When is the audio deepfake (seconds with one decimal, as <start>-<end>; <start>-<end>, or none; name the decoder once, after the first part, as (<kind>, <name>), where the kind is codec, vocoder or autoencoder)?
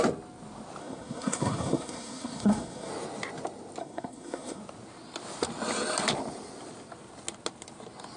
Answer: 0.8-2.9 (codec, SNAC); 3.8-4.6